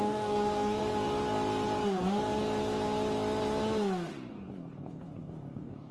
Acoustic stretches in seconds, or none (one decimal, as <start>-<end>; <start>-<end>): 0.8-4.3